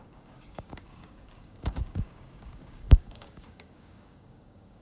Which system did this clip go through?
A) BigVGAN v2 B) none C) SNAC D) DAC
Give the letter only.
D